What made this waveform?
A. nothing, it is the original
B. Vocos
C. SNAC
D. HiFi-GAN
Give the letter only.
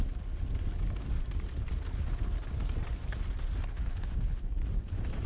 A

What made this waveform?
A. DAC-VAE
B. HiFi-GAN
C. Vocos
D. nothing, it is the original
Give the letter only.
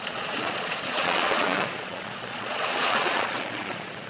C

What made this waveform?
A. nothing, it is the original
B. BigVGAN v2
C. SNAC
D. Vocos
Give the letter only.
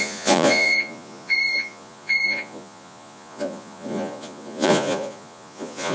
D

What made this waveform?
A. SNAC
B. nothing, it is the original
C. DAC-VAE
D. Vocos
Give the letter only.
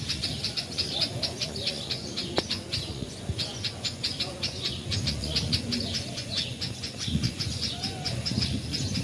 D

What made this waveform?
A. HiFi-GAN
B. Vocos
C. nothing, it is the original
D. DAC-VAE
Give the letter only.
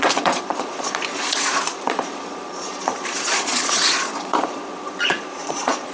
B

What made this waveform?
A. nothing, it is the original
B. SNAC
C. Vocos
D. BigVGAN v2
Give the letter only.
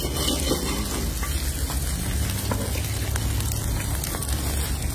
A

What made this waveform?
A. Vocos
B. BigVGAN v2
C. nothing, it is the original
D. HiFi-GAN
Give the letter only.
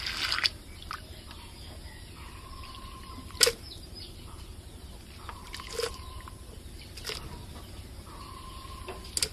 C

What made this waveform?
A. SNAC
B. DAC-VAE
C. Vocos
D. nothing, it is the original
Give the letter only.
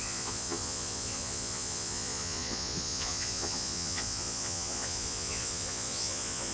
C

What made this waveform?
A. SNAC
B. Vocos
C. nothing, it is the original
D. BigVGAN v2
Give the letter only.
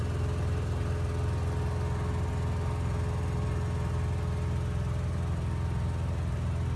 C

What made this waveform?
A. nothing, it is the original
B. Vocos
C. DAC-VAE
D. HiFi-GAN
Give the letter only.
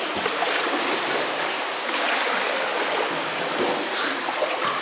A